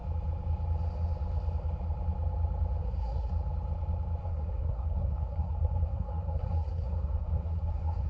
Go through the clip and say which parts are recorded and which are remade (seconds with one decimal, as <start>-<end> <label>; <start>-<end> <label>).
0.0-2.8 recorded; 2.8-3.3 remade; 3.3-4.2 recorded; 4.2-8.1 remade